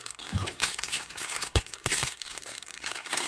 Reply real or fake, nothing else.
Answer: fake